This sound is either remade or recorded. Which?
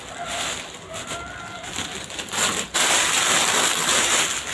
recorded